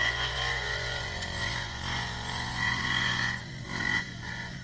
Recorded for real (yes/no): no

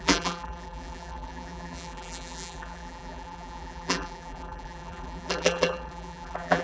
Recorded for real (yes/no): no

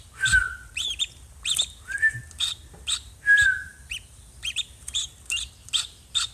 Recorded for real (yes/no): yes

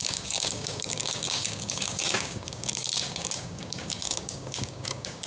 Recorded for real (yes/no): no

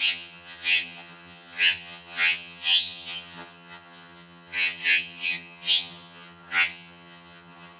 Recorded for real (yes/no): no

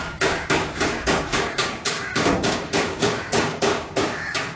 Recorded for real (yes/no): no